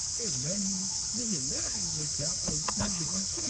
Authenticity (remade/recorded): remade